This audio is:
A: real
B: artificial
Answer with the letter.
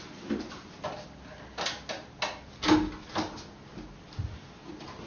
A